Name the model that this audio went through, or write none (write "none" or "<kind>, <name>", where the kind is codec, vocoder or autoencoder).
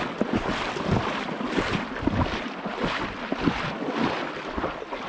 none